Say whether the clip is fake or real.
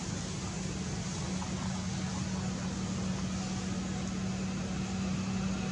real